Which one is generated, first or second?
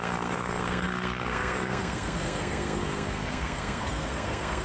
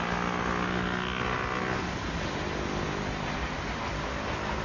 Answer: first